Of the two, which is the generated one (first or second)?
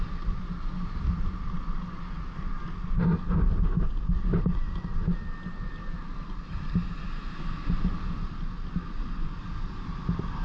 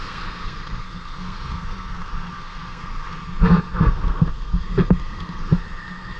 second